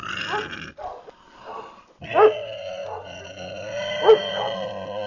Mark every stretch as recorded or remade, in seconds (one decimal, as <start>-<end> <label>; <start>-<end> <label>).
0.0-5.1 recorded